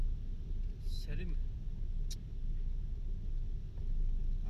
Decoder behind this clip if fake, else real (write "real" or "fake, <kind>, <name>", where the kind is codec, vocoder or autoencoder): real